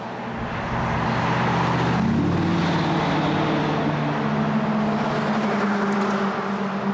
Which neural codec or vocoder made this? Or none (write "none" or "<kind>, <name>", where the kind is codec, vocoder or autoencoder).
none